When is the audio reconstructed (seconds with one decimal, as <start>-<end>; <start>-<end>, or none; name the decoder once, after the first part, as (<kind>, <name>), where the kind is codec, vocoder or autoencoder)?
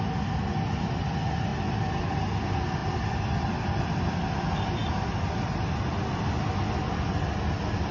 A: 2.8-3.9 (vocoder, BigVGAN v2)